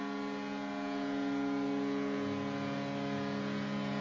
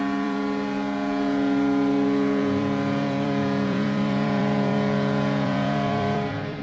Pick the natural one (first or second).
first